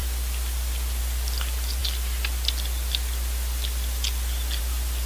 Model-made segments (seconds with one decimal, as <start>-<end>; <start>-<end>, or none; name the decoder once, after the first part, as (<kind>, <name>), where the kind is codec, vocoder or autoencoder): none